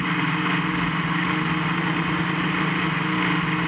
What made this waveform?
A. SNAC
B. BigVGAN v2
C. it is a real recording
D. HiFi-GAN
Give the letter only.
C